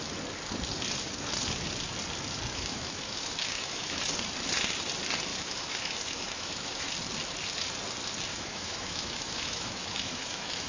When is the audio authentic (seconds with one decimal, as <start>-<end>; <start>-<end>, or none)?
0.0-2.5; 4.0-5.3; 6.9-8.3